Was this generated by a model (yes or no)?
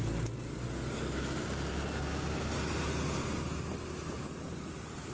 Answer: no